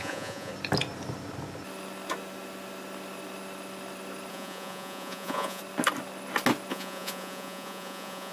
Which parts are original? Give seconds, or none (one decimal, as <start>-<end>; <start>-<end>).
0.5-4.3; 5.6-6.7